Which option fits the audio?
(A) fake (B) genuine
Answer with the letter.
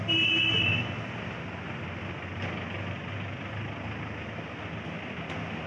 B